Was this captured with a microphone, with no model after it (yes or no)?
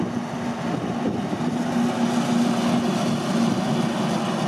yes